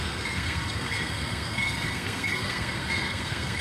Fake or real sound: fake